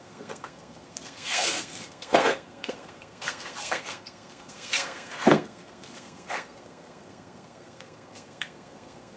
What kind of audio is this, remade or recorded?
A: remade